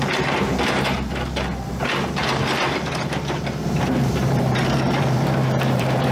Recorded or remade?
remade